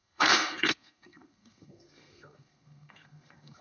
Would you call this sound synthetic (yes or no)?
yes